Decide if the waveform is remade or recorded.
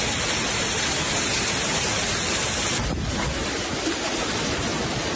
recorded